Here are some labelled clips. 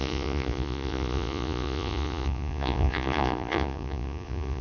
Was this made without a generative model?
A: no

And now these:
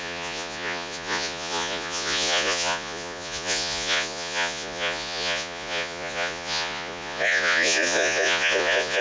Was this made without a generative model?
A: no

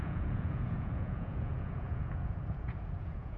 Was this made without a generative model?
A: no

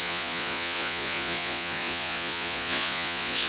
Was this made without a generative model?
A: no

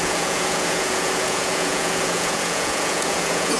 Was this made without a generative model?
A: no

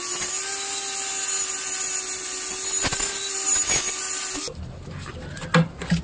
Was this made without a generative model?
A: yes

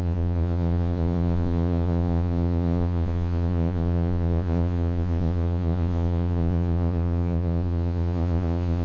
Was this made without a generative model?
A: no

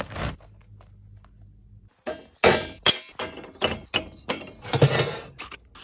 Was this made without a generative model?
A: yes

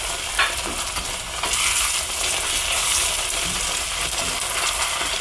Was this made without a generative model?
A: yes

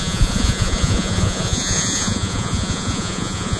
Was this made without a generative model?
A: no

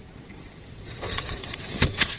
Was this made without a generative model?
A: no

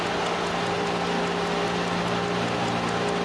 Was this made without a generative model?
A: yes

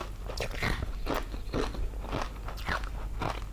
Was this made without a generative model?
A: yes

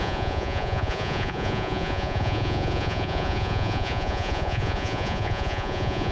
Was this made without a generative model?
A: no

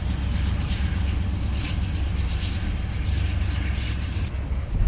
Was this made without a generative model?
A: yes